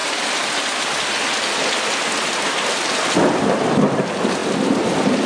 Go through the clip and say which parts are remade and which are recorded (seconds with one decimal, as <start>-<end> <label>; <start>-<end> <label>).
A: 0.0-5.3 recorded